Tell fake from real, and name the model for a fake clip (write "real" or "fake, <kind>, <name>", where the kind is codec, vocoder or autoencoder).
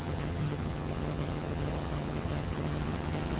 fake, vocoder, HiFi-GAN